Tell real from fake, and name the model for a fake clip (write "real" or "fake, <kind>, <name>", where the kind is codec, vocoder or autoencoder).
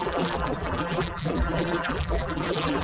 fake, vocoder, BigVGAN v2